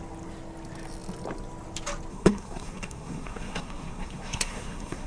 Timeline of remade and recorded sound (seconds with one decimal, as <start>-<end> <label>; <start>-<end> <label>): 0.0-2.1 recorded; 2.1-5.1 remade